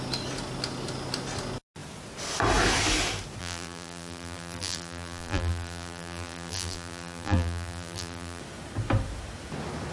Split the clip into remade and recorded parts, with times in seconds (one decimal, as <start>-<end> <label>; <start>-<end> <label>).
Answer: 0.0-3.4 recorded; 3.4-8.4 remade; 8.4-9.9 recorded

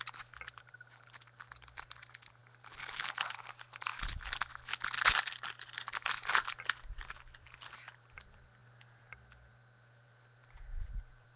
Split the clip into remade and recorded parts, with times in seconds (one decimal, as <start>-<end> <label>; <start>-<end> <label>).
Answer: 0.0-3.9 remade; 3.9-5.1 recorded; 5.1-8.6 remade; 8.6-9.5 recorded; 9.5-11.4 remade

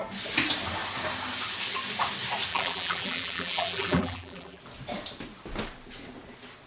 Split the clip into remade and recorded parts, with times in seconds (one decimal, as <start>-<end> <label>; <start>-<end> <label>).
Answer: 0.0-2.5 recorded; 2.5-4.6 remade; 4.6-6.7 recorded

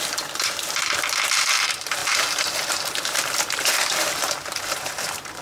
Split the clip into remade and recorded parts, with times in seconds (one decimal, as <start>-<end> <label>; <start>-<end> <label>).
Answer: 0.0-5.4 remade

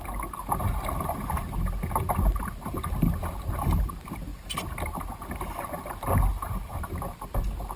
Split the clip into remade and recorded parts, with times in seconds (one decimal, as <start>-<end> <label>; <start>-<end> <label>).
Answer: 0.0-6.3 recorded; 6.3-6.9 remade; 6.9-7.8 recorded

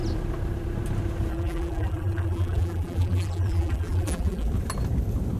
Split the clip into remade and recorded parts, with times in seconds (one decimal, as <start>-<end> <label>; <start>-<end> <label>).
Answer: 0.0-1.3 recorded; 1.3-4.5 remade; 4.5-5.4 recorded